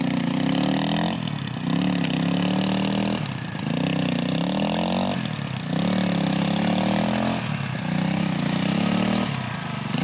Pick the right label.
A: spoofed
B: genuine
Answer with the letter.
B